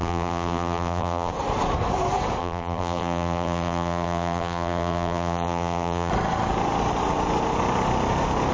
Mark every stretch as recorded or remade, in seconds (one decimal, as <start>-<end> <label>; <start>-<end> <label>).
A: 0.0-1.3 remade; 1.3-2.4 recorded; 2.4-6.1 remade; 6.1-8.5 recorded